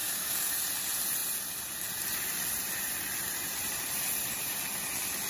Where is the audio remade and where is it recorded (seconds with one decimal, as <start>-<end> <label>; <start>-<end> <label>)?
0.0-0.5 remade; 0.5-5.3 recorded